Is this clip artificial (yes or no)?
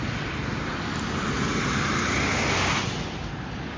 no